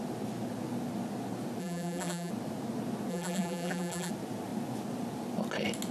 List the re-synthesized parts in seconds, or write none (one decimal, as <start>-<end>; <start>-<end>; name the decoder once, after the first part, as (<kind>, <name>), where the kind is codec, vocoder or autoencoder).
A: 1.6-2.3 (vocoder, BigVGAN v2); 3.1-4.1

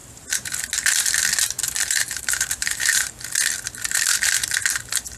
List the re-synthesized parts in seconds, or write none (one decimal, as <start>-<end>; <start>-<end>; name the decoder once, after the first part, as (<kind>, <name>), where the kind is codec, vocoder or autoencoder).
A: 0.0-0.6 (vocoder, BigVGAN v2); 1.6-3.1

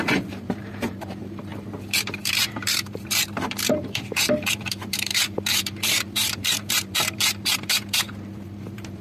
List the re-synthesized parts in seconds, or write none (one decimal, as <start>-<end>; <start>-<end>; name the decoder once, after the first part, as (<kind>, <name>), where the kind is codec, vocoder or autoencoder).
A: 0.0-9.0 (vocoder, BigVGAN v2)

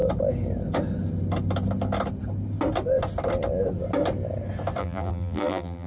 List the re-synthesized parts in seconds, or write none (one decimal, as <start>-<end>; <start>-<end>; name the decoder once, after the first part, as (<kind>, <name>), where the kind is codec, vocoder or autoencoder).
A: 4.8-5.9 (vocoder, BigVGAN v2)

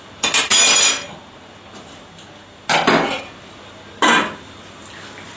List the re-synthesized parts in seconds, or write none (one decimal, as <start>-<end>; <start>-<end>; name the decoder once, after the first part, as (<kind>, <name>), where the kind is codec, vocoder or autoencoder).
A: none

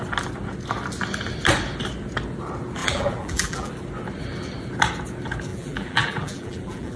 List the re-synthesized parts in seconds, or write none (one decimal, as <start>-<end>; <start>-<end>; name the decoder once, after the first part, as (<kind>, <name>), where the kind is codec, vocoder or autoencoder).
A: 2.8-3.7 (vocoder, BigVGAN v2); 5.5-7.0

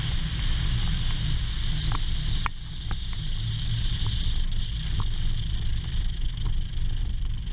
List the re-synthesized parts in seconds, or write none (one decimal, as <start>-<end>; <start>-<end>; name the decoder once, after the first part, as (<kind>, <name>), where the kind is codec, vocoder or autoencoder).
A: 0.0-1.6 (vocoder, BigVGAN v2); 5.7-7.5